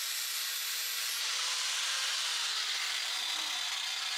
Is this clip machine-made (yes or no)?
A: no